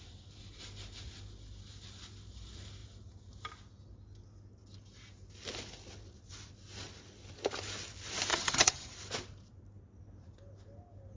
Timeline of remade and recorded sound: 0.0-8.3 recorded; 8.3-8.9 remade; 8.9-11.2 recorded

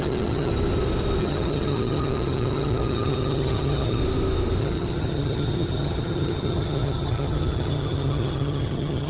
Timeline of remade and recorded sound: 0.0-0.5 remade; 0.5-1.2 recorded; 1.2-4.0 remade; 4.0-4.6 recorded; 4.6-9.1 remade

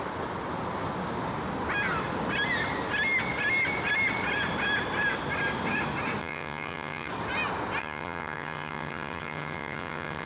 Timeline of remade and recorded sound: 0.0-6.2 recorded; 6.2-7.1 remade; 7.1-7.8 recorded; 7.8-10.3 remade

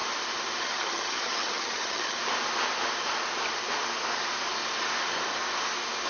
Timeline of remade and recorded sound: 0.0-0.6 recorded; 0.6-2.2 remade; 2.2-6.1 recorded

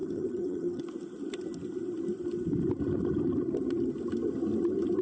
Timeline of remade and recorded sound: 0.0-0.8 remade; 0.8-5.0 recorded

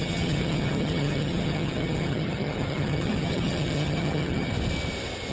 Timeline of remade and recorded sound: 0.0-4.5 remade; 4.5-5.3 recorded

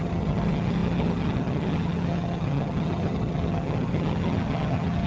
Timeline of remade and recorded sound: 0.0-5.1 remade

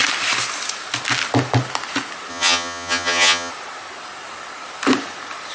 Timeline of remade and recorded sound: 0.0-2.3 recorded; 2.3-3.5 remade; 3.5-5.5 recorded